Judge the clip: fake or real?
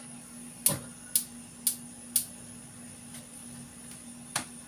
real